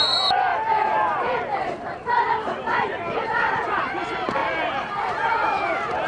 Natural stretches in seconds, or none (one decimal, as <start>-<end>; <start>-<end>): none